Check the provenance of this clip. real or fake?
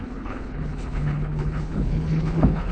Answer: fake